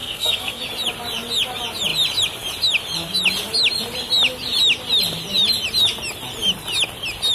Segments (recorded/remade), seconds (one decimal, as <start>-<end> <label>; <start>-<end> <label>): 0.0-0.6 remade; 0.6-7.3 recorded